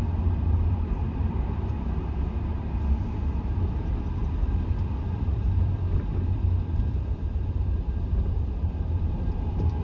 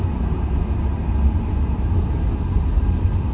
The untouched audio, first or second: second